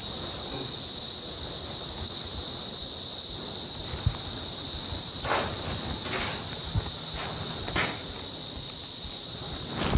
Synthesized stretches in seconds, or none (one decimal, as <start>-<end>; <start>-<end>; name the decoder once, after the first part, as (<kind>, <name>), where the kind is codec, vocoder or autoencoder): 0.0-0.7 (vocoder, BigVGAN v2)